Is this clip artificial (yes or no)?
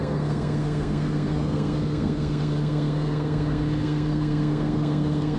yes